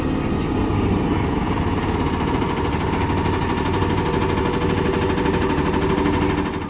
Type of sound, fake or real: real